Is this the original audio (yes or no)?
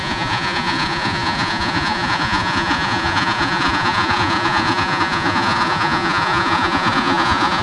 no